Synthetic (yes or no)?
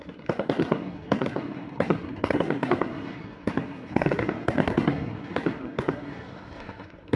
yes